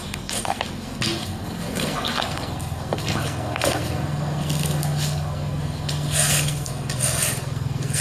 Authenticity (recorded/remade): remade